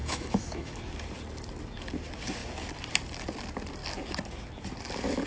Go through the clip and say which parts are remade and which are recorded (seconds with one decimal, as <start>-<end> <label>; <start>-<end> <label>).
0.0-0.8 remade; 0.8-5.3 recorded